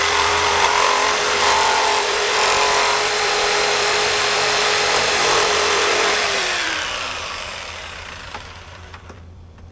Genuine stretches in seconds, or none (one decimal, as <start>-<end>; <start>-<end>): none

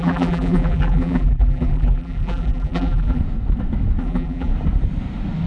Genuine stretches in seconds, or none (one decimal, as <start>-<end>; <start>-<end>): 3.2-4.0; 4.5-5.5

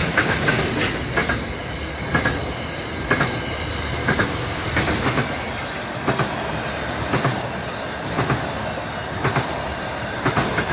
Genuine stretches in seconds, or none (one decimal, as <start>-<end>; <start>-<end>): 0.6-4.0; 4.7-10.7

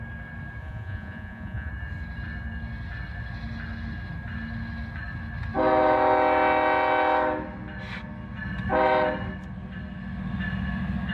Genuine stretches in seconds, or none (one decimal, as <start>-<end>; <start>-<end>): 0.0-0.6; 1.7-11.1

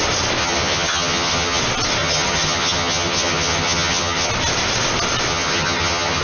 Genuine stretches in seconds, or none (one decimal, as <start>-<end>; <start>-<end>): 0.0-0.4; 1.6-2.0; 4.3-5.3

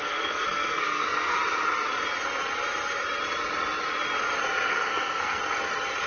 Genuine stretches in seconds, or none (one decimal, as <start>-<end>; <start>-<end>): 1.4-4.7; 5.4-6.1

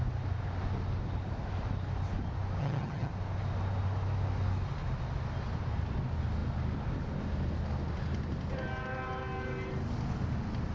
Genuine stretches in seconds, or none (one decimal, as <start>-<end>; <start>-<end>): 0.0-2.6; 3.1-10.7